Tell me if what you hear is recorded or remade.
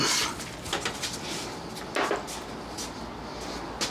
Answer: recorded